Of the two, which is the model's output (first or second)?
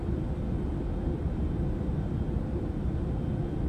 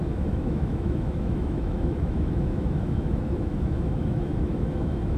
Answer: second